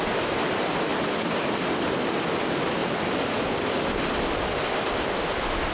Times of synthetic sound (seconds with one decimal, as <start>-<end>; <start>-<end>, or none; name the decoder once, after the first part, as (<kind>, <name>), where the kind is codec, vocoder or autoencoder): 0.9-2.2 (vocoder, BigVGAN v2); 2.8-4.4